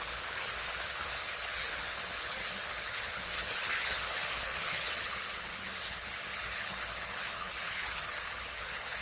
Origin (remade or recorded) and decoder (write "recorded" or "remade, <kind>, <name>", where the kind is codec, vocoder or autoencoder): remade, codec, HILCodec